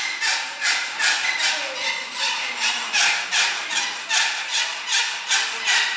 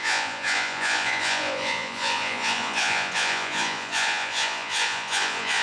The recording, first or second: first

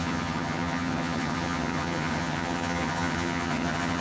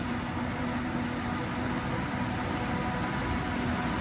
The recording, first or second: second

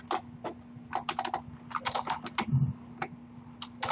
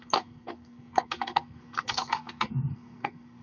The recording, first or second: first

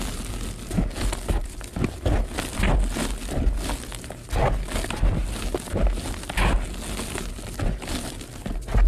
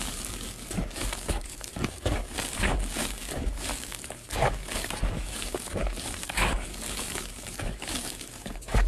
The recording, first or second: first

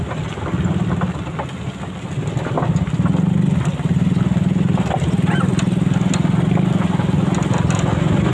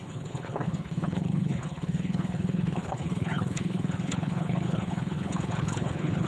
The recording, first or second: first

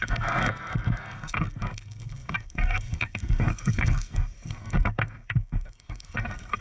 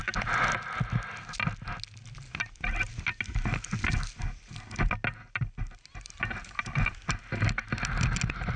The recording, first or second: second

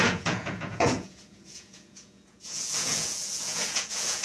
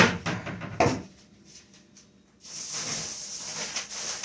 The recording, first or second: second